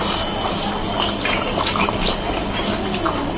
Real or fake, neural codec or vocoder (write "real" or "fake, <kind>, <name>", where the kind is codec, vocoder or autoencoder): real